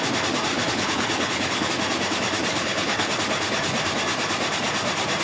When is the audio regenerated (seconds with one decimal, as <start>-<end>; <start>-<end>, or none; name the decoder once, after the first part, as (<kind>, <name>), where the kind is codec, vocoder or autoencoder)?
0.5-1.7 (codec, HILCodec); 2.5-3.1